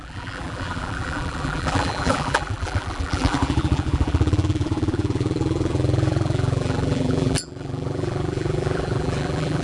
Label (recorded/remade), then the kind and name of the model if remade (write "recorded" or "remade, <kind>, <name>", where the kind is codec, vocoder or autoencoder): remade, vocoder, BigVGAN v2